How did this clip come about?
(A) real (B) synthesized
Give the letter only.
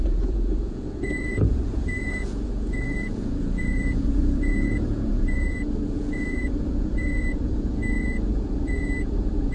B